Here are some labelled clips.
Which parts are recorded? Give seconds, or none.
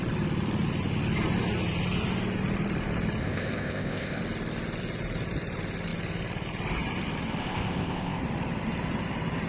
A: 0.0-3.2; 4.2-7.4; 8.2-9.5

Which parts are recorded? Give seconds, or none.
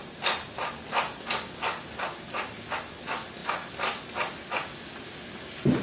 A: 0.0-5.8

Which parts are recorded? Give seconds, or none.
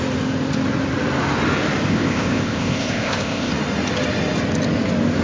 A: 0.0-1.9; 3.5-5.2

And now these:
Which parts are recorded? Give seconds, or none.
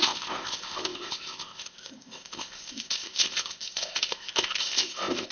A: none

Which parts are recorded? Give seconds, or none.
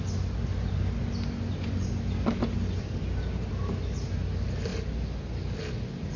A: 0.0-6.2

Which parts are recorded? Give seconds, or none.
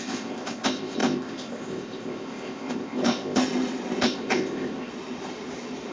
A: 3.4-4.0; 4.9-5.9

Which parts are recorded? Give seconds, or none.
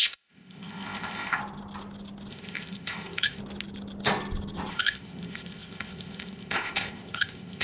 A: 1.4-2.3; 3.4-4.7